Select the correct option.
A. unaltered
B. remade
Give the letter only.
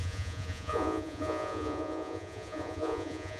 B